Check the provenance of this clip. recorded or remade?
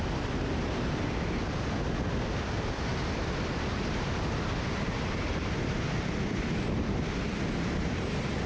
recorded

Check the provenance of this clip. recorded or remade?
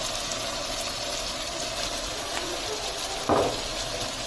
recorded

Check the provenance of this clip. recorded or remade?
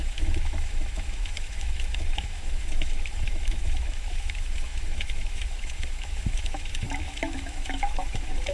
remade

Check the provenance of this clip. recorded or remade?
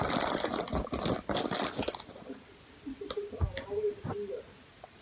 recorded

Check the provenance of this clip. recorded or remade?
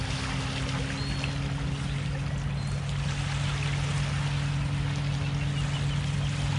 recorded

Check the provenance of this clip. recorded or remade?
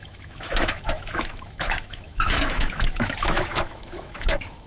remade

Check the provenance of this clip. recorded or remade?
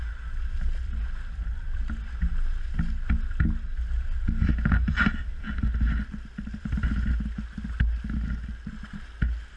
recorded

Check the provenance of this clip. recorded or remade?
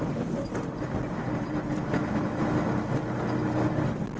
recorded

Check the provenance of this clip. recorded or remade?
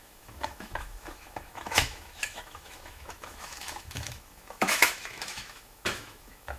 remade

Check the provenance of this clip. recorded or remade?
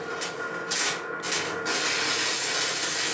recorded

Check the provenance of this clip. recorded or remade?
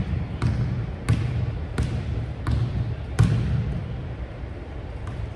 recorded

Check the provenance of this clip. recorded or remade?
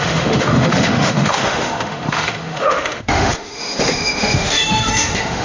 remade